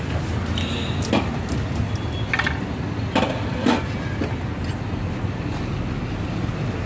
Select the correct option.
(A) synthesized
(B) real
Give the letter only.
B